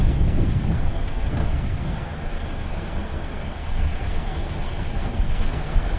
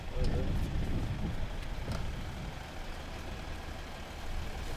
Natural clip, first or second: second